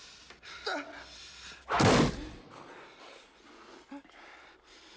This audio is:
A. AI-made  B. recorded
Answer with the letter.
B